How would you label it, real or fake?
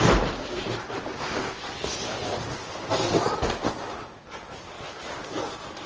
real